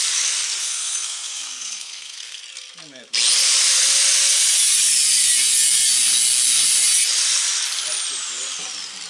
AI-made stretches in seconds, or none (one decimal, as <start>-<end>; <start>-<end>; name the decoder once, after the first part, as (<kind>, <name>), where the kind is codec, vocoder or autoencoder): 0.6-2.4 (codec, SNAC)